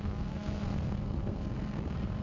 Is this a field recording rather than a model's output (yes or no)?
no